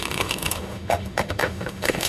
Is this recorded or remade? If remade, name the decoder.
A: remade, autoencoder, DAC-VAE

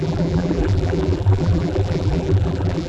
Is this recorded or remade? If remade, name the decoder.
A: remade, vocoder, BigVGAN v2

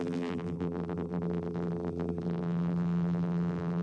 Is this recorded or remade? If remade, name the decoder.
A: remade, vocoder, BigVGAN v2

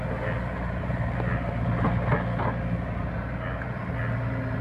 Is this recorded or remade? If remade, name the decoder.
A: recorded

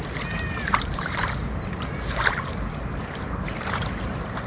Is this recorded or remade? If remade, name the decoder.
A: remade, vocoder, BigVGAN v2